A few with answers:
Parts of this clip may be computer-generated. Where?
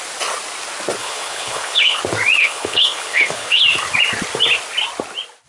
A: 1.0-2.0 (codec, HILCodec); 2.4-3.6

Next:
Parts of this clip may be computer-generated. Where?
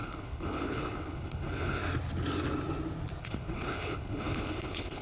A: 0.0-1.8 (codec, HILCodec); 3.2-5.0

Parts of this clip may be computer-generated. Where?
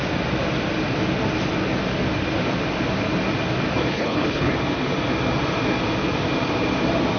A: 3.9-4.5 (codec, HILCodec)